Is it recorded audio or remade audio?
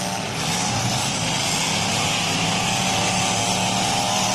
recorded